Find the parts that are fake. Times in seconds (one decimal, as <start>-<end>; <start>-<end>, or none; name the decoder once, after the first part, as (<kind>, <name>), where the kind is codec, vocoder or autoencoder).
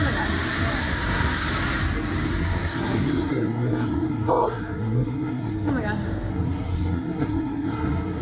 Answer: 0.8-1.5 (codec, SNAC); 2.3-5.7; 6.3-8.2